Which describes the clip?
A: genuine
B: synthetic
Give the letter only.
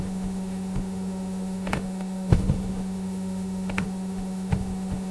B